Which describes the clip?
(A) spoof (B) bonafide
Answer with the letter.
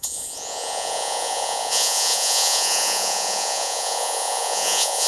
A